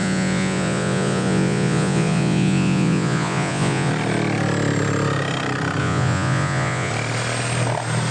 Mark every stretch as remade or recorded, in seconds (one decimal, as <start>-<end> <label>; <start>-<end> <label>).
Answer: 0.0-3.9 remade; 3.9-5.8 recorded; 5.8-6.9 remade; 6.9-8.1 recorded